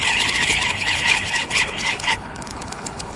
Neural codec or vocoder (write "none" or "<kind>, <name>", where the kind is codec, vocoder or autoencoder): codec, HILCodec